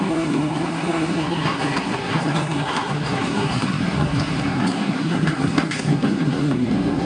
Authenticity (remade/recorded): remade